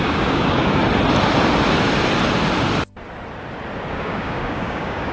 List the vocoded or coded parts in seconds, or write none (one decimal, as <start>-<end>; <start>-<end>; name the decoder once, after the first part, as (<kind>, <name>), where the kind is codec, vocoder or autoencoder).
0.0-0.8 (codec, DAC); 3.9-5.1